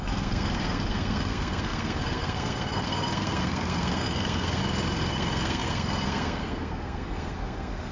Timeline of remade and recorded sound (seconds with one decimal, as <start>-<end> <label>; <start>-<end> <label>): 0.0-4.6 remade; 4.6-5.1 recorded; 5.1-7.9 remade